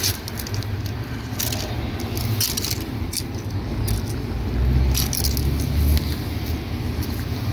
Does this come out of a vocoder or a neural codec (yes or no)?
no